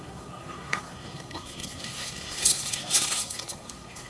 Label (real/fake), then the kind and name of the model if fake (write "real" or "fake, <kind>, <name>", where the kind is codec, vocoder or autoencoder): fake, codec, SNAC